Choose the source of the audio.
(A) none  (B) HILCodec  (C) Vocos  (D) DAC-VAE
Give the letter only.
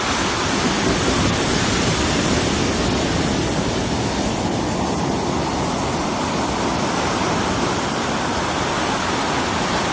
A